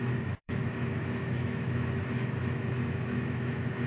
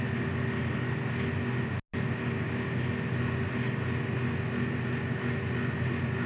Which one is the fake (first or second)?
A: first